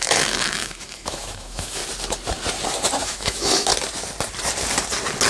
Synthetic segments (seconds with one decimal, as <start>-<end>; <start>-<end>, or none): 0.0-1.8; 3.0-3.7